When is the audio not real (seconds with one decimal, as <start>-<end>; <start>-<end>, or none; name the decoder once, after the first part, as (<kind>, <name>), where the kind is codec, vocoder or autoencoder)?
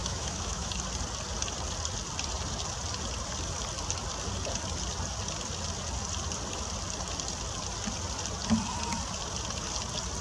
0.0-0.7 (autoencoder, DAC-VAE)